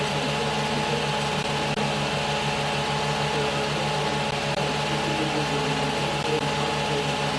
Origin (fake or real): real